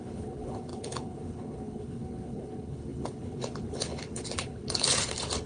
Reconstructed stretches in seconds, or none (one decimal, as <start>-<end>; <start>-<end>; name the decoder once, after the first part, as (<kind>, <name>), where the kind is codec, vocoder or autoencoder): 0.0-5.5 (codec, HILCodec)